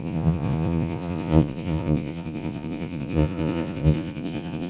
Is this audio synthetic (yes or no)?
yes